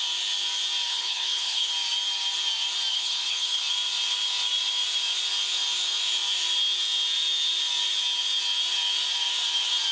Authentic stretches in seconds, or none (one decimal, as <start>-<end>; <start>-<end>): 0.0-0.9; 1.7-2.9; 3.6-9.9